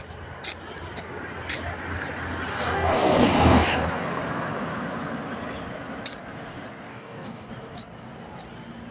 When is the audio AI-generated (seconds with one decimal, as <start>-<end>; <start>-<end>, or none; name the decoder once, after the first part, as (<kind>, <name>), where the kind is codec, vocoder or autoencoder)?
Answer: 2.5-4.0 (codec, DAC); 6.9-7.5